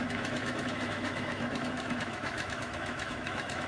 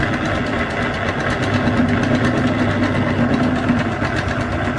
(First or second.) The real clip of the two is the second